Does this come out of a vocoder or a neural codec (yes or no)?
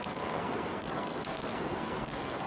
yes